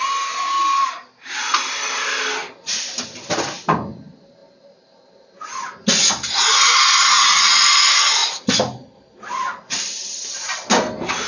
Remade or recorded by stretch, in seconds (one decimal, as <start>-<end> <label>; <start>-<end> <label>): 0.0-11.3 recorded